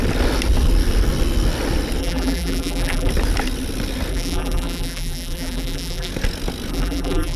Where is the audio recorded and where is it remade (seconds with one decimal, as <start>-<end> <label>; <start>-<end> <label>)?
0.0-2.0 recorded; 2.0-3.1 remade; 3.1-4.1 recorded; 4.1-6.1 remade; 6.1-6.7 recorded; 6.7-7.4 remade

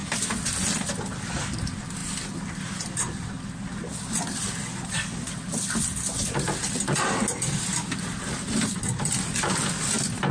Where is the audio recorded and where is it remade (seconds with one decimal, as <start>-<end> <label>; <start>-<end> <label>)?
0.0-10.3 recorded